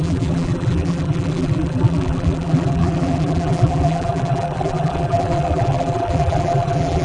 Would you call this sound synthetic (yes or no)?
yes